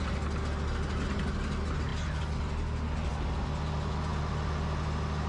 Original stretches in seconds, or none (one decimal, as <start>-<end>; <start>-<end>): 0.0-5.3